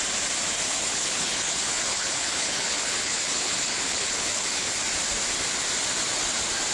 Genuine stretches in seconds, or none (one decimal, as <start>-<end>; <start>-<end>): 0.0-0.7; 4.7-6.7